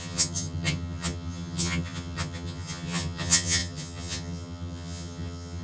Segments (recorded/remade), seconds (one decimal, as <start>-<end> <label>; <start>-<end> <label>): 0.0-5.6 remade